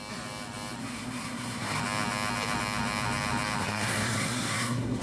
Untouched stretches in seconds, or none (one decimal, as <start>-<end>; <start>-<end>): 0.0-0.8; 1.8-3.6

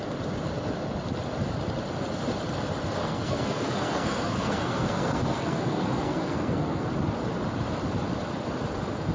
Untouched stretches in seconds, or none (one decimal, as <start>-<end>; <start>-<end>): 0.0-3.0; 6.9-9.1

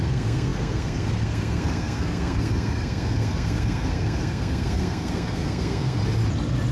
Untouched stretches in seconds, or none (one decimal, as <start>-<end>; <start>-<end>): 6.0-6.7

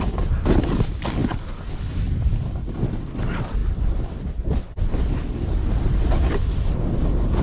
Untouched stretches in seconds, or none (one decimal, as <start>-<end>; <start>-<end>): 0.0-7.4

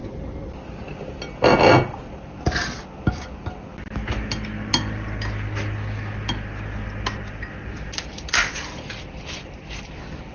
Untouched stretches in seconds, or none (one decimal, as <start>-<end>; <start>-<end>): 0.0-10.3

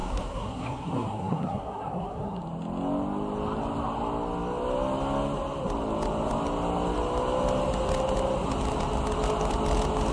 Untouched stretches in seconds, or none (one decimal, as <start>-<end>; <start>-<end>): 2.4-10.1

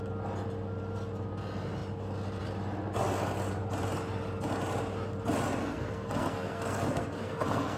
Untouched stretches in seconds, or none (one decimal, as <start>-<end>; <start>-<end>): 0.0-5.6